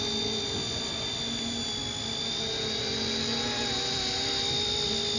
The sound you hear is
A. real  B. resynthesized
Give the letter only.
A